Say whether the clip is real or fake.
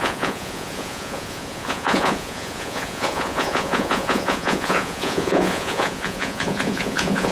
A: fake